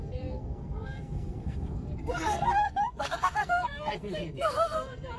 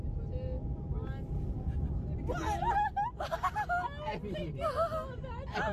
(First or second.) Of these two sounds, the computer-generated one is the first